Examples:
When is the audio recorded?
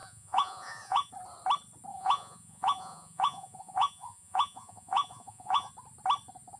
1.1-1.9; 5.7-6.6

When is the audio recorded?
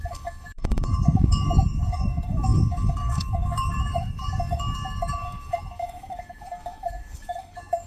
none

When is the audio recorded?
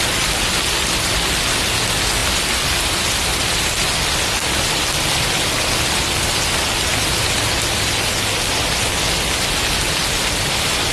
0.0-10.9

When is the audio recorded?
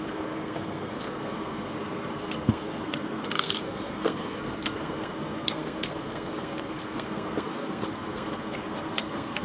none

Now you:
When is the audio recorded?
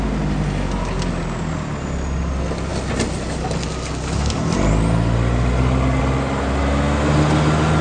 0.0-7.8